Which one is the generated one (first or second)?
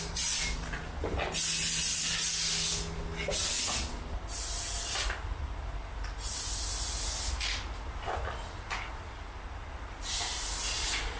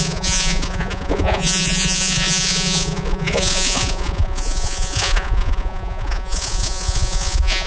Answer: second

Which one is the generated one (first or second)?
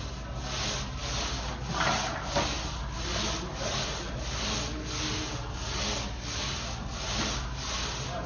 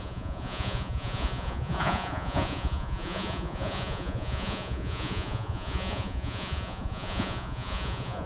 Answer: second